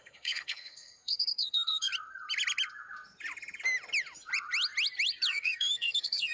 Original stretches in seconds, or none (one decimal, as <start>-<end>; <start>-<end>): 1.9-5.3